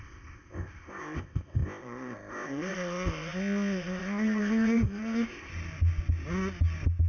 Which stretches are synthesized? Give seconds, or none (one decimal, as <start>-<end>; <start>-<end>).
0.0-5.5